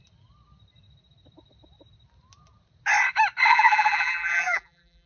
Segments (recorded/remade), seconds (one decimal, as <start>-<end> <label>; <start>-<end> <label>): 0.0-3.5 recorded; 3.5-5.1 remade